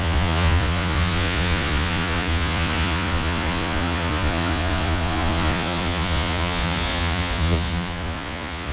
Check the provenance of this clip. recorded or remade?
remade